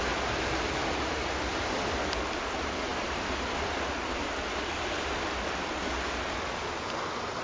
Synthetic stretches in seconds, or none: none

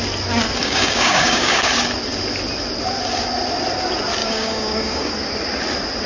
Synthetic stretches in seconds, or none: 0.6-1.7 (codec, DAC); 4.2-5.1

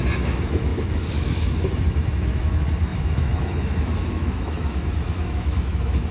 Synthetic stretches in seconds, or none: 0.0-6.1 (autoencoder, DAC-VAE)

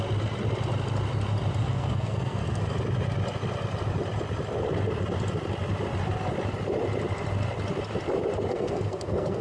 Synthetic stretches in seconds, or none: 1.6-2.6 (codec, SNAC); 8.5-9.4